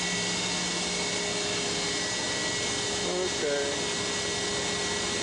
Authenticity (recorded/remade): recorded